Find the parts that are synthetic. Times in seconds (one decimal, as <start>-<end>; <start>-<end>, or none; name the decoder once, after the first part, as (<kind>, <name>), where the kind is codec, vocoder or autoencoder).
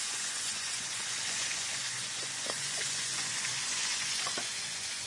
0.0-5.1 (vocoder, Vocos)